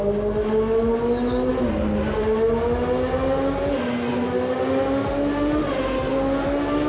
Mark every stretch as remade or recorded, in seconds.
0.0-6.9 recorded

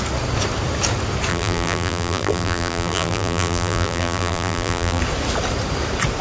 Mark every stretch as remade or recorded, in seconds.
0.0-1.3 recorded; 1.3-5.0 remade; 5.0-6.2 recorded

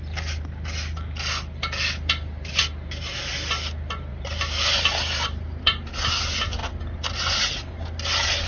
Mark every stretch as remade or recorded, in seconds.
0.0-4.1 recorded; 4.1-5.9 remade; 5.9-8.5 recorded

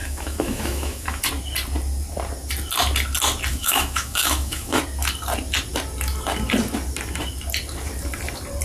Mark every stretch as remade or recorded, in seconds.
0.0-1.2 remade; 1.2-3.5 recorded; 3.5-4.8 remade; 4.8-8.6 recorded

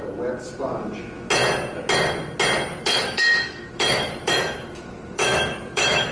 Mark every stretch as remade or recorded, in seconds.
0.0-2.7 recorded; 2.7-6.1 remade

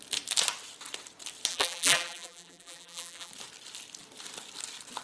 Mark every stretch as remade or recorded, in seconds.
0.0-1.5 recorded; 1.5-3.3 remade; 3.3-5.0 recorded

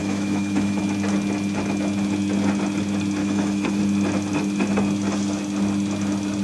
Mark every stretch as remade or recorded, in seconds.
0.0-0.8 remade; 0.8-3.2 recorded; 3.2-3.8 remade; 3.8-6.4 recorded

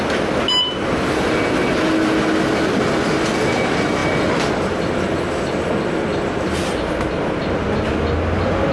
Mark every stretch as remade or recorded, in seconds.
0.0-4.0 recorded; 4.0-4.5 remade; 4.5-6.1 recorded; 6.1-6.9 remade; 6.9-8.7 recorded